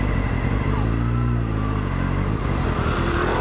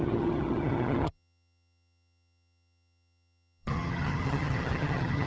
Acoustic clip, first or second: first